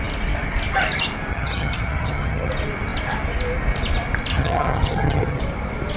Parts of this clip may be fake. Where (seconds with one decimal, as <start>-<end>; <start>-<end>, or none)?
1.3-2.5; 4.3-5.4